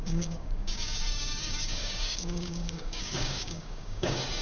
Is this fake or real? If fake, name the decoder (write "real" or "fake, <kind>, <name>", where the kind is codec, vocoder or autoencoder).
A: fake, codec, DAC